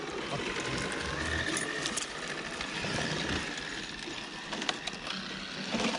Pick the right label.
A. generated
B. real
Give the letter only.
B